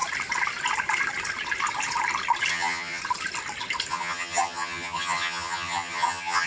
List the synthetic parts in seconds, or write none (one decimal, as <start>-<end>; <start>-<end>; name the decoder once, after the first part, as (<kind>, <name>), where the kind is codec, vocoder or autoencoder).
2.5-3.0 (vocoder, HiFi-GAN); 3.9-6.5